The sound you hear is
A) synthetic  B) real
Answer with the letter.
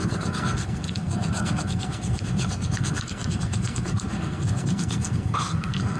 A